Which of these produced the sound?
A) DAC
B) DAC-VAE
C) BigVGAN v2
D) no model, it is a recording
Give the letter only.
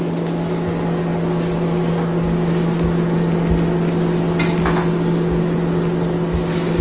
D